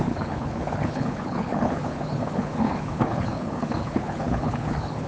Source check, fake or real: fake